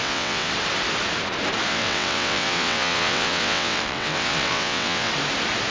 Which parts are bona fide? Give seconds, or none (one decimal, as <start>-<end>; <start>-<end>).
0.5-1.7; 5.1-5.7